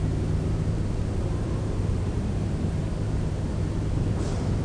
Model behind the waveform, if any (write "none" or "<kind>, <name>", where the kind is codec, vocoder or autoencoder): vocoder, BigVGAN v2